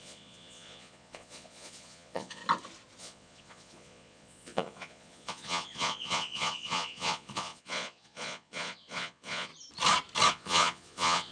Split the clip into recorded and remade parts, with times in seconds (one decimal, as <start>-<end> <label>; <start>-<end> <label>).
0.0-2.4 remade; 2.4-3.0 recorded; 3.0-9.5 remade; 9.5-10.3 recorded; 10.3-11.3 remade